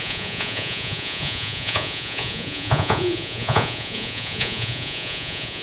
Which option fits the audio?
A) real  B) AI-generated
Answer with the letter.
B